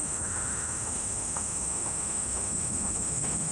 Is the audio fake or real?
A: fake